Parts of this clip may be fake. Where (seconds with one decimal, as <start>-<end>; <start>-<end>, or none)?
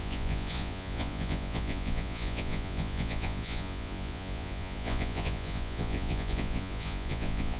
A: 0.0-7.6